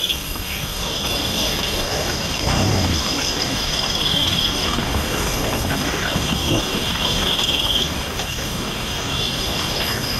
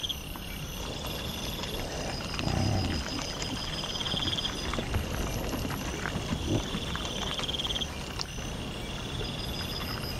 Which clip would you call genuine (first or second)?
second